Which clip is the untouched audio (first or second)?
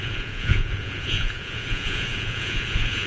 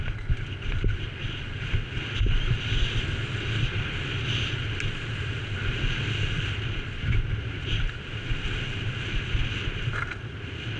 second